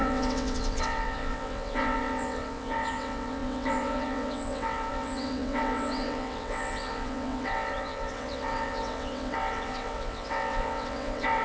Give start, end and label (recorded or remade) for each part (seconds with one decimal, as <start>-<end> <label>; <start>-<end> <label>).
0.0-11.4 remade